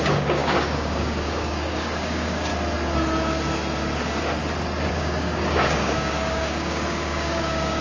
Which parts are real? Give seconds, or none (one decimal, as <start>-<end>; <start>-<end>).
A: 2.5-4.9